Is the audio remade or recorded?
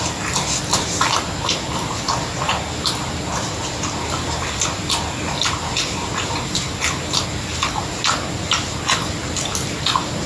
recorded